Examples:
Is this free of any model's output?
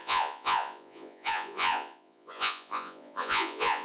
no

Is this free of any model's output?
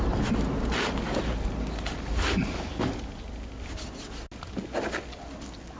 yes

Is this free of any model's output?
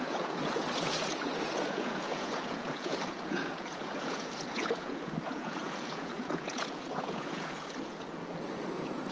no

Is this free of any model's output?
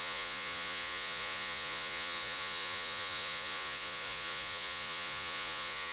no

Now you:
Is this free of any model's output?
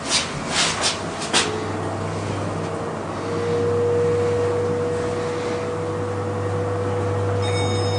yes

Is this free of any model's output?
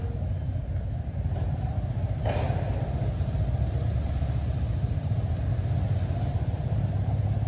yes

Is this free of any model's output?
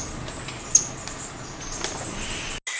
yes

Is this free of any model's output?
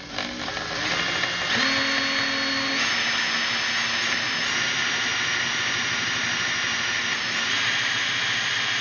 yes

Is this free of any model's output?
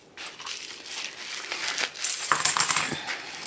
yes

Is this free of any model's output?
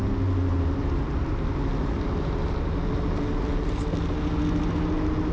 yes